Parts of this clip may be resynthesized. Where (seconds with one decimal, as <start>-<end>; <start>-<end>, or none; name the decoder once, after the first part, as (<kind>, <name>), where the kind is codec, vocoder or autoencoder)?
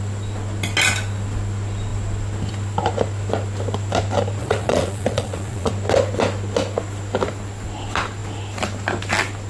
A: 4.4-5.7 (vocoder, Vocos)